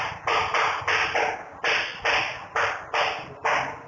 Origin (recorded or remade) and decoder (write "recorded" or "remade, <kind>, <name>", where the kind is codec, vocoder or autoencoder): recorded